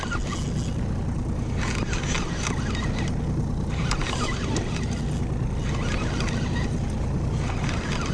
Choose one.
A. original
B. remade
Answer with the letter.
A